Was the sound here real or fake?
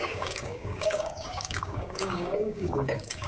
fake